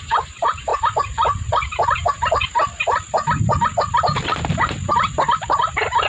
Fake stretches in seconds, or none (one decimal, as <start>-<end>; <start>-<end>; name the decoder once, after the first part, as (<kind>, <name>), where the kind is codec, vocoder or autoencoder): 0.0-0.7 (vocoder, BigVGAN v2); 4.4-6.1